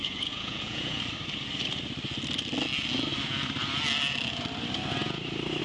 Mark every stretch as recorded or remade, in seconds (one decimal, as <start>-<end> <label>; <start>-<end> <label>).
0.0-1.0 remade; 1.0-5.6 recorded